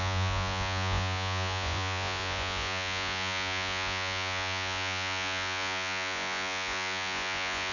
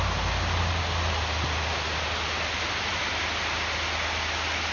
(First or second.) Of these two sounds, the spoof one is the first